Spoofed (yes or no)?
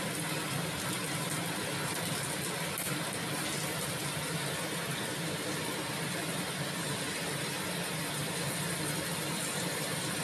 yes